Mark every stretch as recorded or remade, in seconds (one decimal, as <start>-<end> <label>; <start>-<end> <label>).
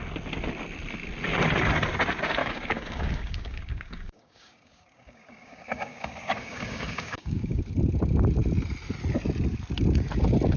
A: 0.0-2.4 recorded; 2.4-7.6 remade; 7.6-10.6 recorded